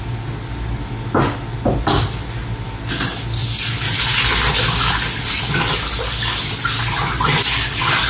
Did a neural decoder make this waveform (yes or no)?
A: no